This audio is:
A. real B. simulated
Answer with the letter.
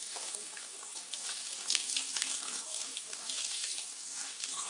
B